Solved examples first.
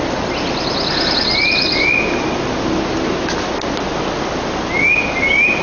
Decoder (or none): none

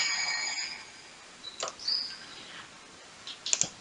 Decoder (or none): none